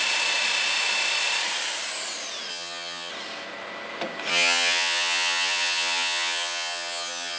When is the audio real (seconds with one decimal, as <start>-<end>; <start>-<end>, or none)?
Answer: 0.0-2.5; 3.1-4.3